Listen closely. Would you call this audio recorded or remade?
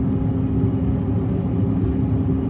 recorded